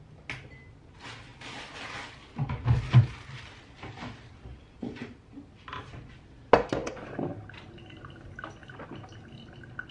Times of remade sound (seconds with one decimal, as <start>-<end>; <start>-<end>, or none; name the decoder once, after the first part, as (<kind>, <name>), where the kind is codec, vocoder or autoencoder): 1.3-4.4 (vocoder, BigVGAN v2); 6.8-7.3